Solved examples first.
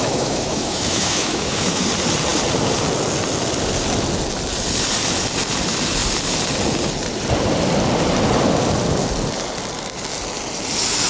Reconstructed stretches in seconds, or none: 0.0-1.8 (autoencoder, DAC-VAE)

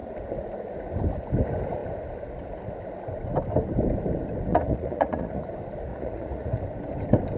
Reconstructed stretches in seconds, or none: 4.5-5.4 (vocoder, Vocos); 5.9-6.6

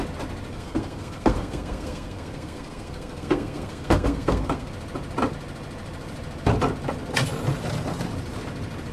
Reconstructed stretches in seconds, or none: 0.5-4.7 (codec, SNAC)

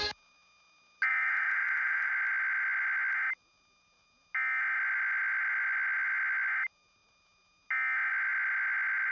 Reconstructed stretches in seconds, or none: 1.1-2.1 (vocoder, Vocos)